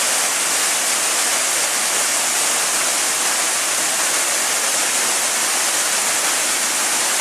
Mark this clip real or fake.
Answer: real